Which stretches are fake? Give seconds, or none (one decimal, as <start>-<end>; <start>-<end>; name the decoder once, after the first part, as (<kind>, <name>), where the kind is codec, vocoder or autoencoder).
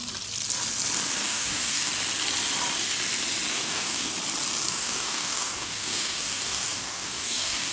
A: 1.2-1.9 (codec, DAC); 3.5-4.1; 4.7-7.7